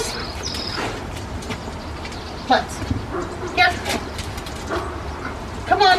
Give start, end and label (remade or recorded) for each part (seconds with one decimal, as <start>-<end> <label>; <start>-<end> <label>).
0.0-1.6 recorded; 1.6-5.1 remade; 5.1-6.0 recorded